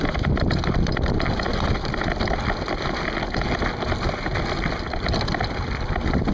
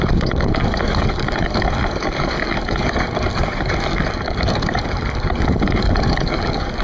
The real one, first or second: first